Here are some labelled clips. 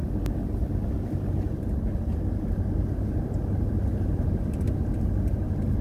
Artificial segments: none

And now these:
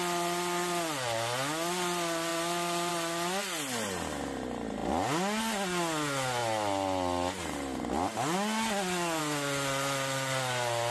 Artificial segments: none

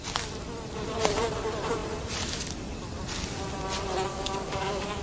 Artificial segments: 4.1-5.0

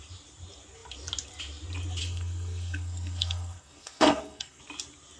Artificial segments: 2.0-4.6

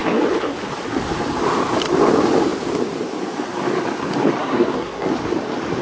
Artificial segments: 4.4-5.1